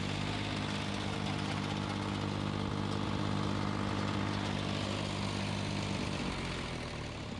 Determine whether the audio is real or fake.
real